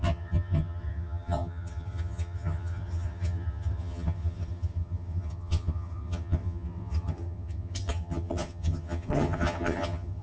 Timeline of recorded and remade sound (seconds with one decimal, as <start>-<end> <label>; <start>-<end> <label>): 0.0-10.2 remade